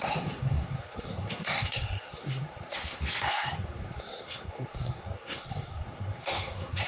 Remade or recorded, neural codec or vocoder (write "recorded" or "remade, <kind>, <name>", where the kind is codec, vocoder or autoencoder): remade, codec, SNAC